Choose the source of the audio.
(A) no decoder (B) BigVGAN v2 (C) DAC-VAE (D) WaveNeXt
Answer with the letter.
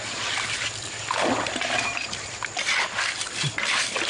A